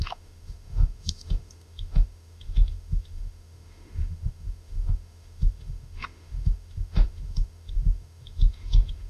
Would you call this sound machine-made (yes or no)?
yes